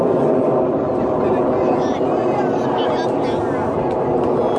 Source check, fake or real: real